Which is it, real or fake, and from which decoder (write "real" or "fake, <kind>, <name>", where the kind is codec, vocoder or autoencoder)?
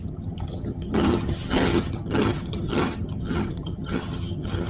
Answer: fake, vocoder, HiFi-GAN